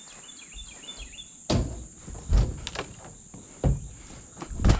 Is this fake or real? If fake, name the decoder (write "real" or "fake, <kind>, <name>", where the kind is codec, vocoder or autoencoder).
real